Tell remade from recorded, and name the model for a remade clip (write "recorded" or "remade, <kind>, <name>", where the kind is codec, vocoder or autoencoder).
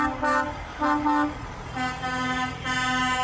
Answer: recorded